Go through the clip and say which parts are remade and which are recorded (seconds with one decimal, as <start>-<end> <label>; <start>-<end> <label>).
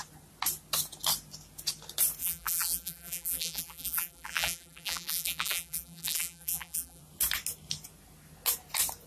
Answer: 0.0-2.2 recorded; 2.2-7.0 remade; 7.0-9.1 recorded